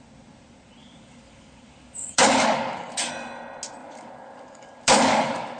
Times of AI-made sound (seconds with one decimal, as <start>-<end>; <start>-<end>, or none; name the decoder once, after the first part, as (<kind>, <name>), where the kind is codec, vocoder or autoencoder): 0.8-3.1 (codec, DAC); 3.8-5.6